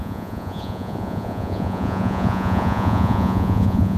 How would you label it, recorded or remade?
remade